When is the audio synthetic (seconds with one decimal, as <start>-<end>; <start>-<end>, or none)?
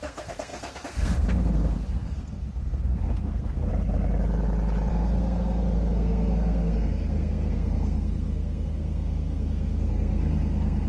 0.0-3.7; 4.9-10.9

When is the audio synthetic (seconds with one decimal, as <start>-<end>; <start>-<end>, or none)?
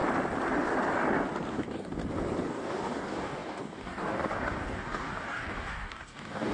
1.5-2.0; 2.5-6.5